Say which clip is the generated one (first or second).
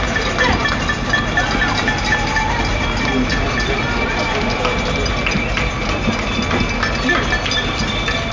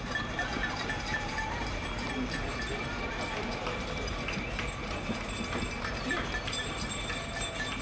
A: second